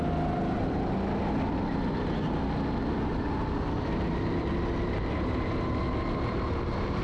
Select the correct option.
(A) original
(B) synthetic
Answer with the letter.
A